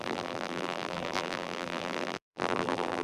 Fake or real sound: fake